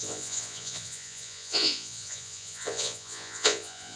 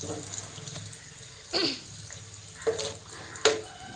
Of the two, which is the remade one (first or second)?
first